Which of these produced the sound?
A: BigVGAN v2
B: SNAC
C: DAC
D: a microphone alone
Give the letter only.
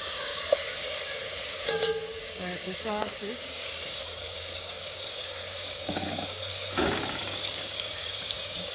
C